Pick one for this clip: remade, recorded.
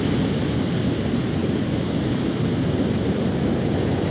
recorded